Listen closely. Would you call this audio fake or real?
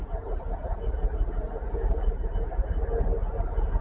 real